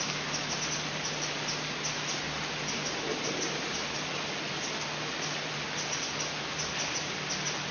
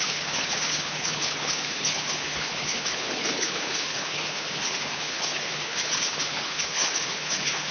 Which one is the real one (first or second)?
first